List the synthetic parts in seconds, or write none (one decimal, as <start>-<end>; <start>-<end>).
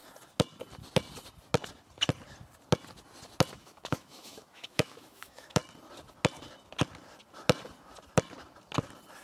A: 3.5-5.6